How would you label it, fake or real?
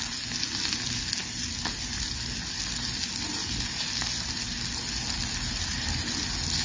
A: real